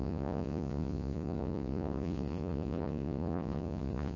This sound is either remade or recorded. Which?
remade